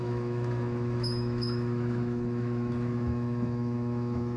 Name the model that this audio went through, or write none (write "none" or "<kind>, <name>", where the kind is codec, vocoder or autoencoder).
autoencoder, DAC-VAE